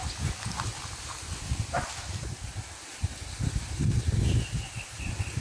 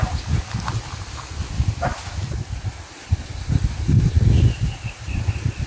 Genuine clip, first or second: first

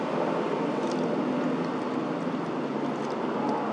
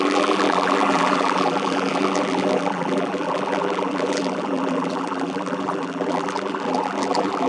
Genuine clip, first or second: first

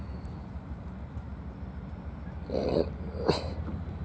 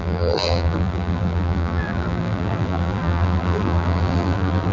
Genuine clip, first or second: first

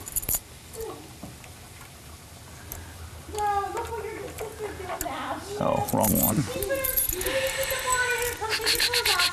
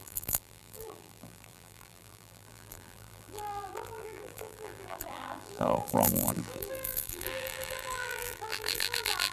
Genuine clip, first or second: first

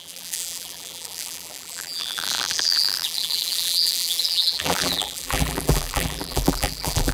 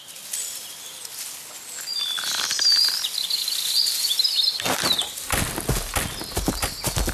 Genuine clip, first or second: second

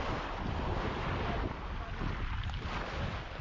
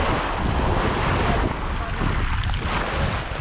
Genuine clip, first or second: second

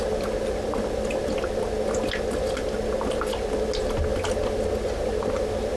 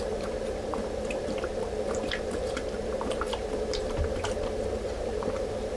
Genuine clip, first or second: first